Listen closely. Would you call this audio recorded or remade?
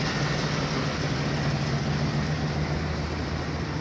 recorded